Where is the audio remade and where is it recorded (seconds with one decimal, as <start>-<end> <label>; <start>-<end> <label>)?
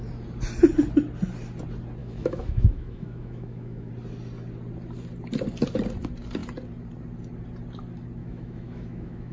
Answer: 0.0-2.0 recorded; 2.0-3.9 remade; 3.9-8.2 recorded; 8.2-9.3 remade